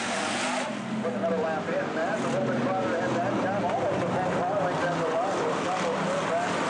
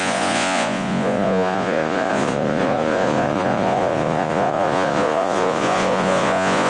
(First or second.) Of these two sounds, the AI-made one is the second